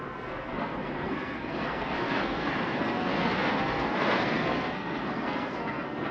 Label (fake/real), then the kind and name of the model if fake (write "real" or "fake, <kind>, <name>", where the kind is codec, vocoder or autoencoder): fake, codec, SNAC